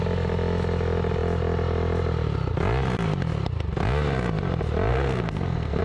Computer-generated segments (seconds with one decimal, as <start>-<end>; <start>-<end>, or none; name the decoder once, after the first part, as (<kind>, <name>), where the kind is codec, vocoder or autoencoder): 4.9-5.8 (codec, SNAC)